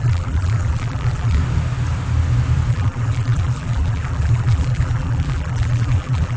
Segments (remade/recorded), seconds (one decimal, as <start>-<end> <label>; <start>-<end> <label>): 0.0-1.4 remade; 1.4-2.7 recorded; 2.7-6.4 remade